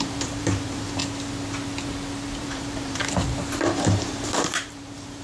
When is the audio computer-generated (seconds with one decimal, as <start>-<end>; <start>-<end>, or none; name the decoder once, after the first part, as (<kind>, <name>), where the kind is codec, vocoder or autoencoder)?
0.0-1.0 (vocoder, BigVGAN v2); 2.4-3.0; 4.0-5.2